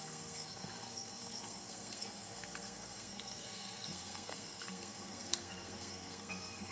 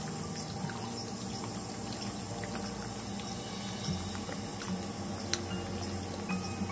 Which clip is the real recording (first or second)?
second